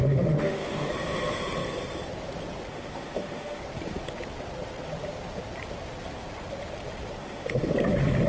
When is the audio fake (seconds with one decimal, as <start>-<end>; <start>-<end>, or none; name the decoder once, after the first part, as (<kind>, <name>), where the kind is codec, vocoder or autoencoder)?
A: 0.0-0.9 (autoencoder, DAC-VAE); 2.7-3.6; 7.2-7.7

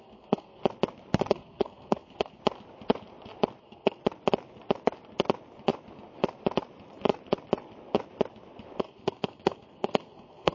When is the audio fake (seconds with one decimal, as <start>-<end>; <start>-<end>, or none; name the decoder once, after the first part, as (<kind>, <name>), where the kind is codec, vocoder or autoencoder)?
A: 0.0-0.6 (codec, SNAC); 1.3-2.4; 3.6-4.0; 8.8-10.5

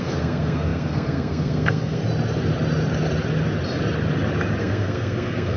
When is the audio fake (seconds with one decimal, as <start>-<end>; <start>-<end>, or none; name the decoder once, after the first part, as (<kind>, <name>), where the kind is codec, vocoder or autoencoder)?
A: 0.0-2.0 (codec, SNAC); 4.6-5.6

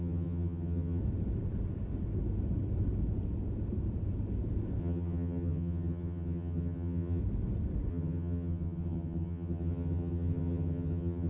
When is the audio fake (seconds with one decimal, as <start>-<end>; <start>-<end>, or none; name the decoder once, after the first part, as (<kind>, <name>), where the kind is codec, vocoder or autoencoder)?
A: 0.0-1.0 (vocoder, HiFi-GAN); 4.8-7.2; 7.9-11.3

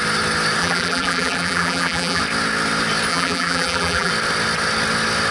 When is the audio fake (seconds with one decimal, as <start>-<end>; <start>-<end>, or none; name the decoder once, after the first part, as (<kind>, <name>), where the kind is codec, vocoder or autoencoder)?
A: 0.6-2.2 (vocoder, BigVGAN v2); 3.1-4.1